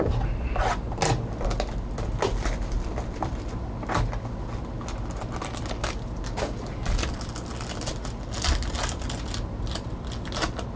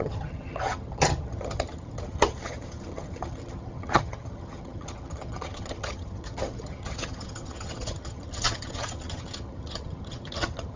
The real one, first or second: first